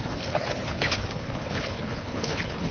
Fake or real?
fake